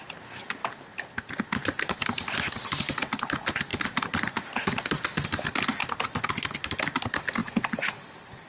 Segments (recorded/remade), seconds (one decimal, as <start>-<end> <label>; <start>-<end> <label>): 0.0-8.5 recorded